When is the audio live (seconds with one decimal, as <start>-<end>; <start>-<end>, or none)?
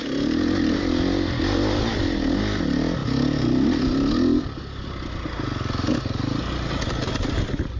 0.0-7.8